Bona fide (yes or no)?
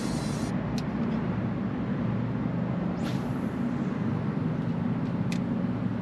yes